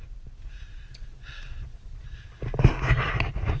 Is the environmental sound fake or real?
real